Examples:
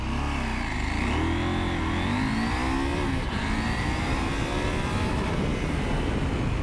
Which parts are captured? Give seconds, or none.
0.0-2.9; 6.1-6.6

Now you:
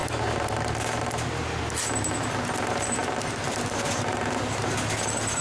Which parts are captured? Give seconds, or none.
0.0-3.0; 3.9-5.4

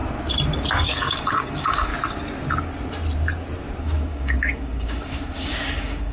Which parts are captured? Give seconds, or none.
0.0-0.7; 1.9-3.8

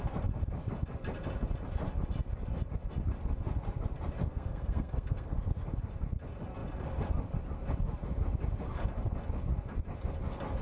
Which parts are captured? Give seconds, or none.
0.0-4.3; 5.6-10.6

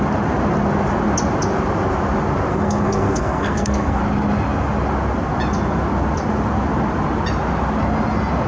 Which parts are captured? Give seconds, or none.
0.0-2.5; 4.0-8.5

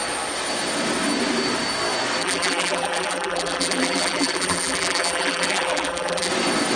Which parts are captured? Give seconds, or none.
0.0-2.2; 6.3-6.8

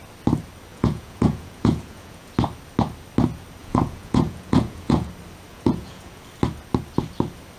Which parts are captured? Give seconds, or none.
0.0-0.7; 2.3-3.6; 5.1-5.5; 6.2-7.6

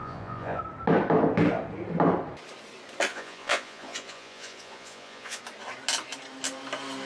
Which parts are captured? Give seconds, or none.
0.6-3.1; 5.4-7.1